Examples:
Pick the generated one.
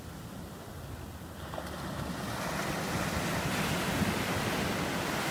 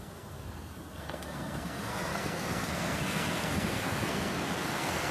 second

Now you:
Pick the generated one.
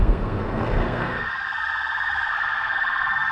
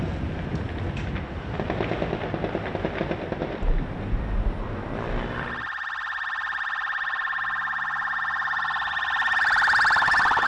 first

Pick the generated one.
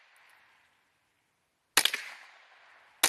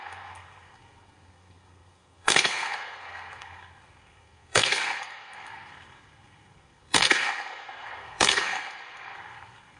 second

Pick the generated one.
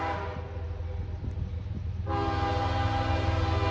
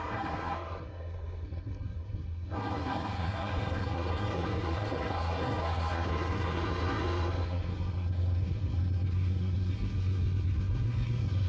second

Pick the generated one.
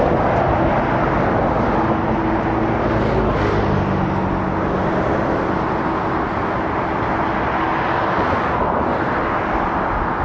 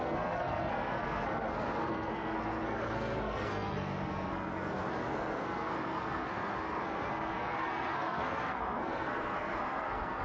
second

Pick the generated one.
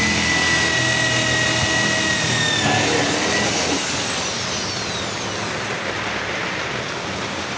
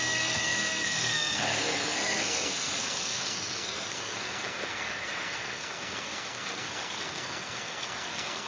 second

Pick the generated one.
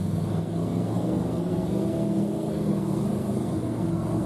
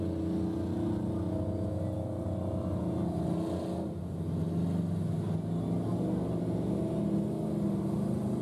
first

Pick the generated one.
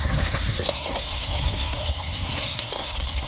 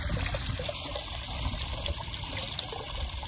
first